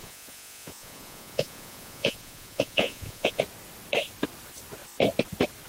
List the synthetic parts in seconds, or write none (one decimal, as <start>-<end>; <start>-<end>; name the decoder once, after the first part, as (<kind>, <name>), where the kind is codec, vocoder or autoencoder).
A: 0.0-3.4 (vocoder, Vocos)